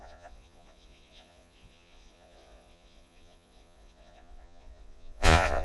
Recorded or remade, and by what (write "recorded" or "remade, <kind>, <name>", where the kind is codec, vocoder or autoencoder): remade, vocoder, Vocos